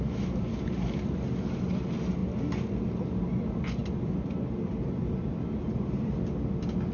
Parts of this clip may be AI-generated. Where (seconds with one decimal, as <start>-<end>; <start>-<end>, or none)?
3.8-5.4